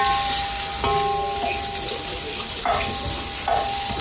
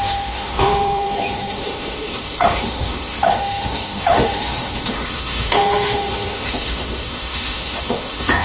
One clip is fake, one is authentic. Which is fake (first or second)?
second